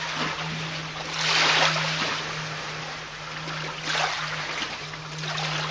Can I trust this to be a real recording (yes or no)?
yes